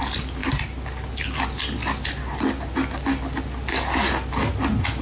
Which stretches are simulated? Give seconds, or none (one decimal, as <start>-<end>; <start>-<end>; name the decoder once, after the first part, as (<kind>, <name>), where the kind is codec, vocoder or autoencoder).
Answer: none